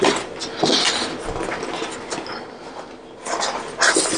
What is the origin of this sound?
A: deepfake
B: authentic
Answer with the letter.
B